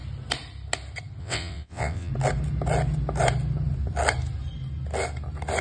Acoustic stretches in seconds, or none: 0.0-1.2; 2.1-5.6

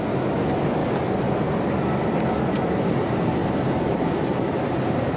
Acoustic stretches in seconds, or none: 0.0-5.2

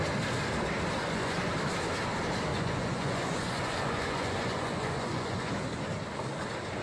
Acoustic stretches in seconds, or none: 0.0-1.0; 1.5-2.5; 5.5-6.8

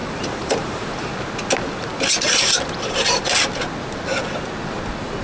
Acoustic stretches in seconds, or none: 1.1-5.2

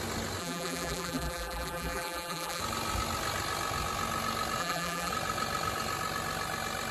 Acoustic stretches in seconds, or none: 0.0-0.4; 2.6-4.6; 5.1-6.9

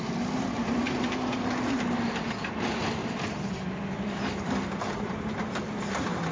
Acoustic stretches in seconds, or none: 0.0-3.0; 5.2-6.3

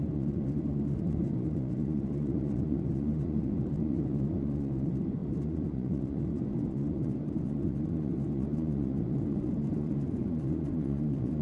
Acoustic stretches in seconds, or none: none

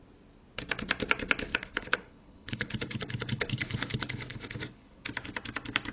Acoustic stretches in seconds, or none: 0.0-1.5; 5.0-5.9